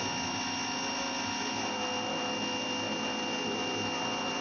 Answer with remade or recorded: recorded